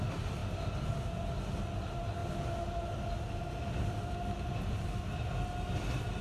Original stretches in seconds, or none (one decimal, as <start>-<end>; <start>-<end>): 0.0-6.2